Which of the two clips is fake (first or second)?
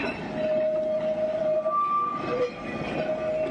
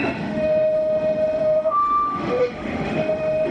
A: second